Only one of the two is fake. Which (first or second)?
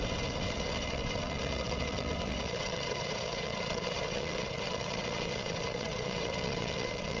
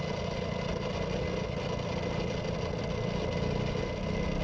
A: first